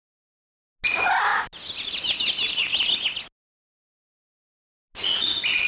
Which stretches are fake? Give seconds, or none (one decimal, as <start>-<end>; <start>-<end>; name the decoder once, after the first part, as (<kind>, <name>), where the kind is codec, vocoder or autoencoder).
none